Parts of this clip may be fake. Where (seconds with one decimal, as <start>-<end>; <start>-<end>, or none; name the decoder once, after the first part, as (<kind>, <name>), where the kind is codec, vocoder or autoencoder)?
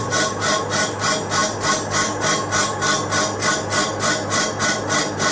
none